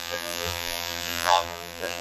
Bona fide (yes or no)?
no